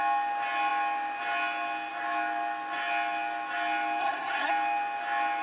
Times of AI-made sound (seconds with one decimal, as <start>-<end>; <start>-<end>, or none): 4.0-4.5